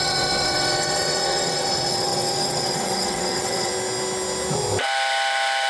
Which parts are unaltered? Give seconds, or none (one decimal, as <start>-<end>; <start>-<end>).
3.7-5.7